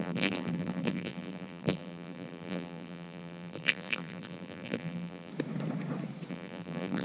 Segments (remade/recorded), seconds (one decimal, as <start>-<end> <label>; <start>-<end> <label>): 0.0-5.3 remade; 5.3-6.3 recorded; 6.3-7.0 remade